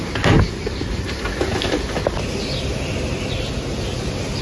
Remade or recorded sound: recorded